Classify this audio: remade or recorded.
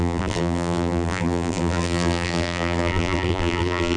remade